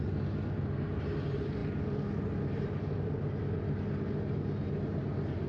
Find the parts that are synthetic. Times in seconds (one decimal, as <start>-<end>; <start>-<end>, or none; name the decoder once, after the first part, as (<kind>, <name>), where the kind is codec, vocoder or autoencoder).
none